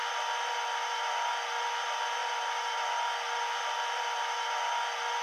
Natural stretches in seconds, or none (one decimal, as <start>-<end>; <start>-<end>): 0.0-2.2; 4.2-5.2

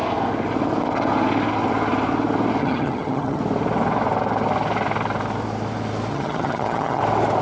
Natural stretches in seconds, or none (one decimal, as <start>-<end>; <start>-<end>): 0.0-2.6; 3.4-6.1; 7.0-7.4

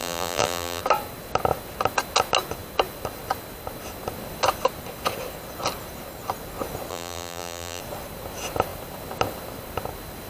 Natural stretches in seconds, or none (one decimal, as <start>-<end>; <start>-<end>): 0.8-6.9; 7.8-10.3